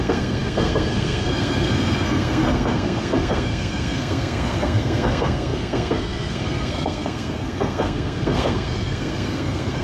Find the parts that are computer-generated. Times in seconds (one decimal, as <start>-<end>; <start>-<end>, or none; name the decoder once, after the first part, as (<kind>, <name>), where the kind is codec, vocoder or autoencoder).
0.0-9.8 (codec, SNAC)